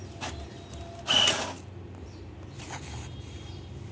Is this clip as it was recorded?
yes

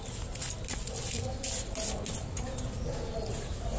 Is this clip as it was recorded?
yes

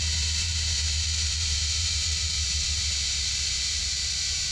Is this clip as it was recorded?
no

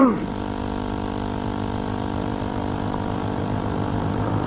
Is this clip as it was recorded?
no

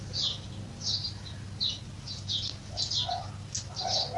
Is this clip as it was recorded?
yes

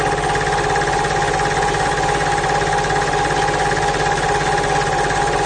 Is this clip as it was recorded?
yes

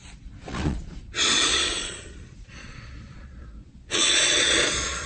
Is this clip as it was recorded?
no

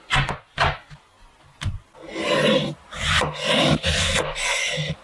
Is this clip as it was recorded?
yes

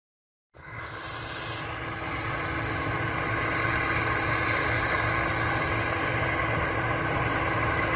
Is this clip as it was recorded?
yes